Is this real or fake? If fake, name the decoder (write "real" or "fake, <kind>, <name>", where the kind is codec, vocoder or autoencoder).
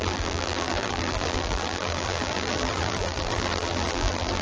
fake, vocoder, BigVGAN v2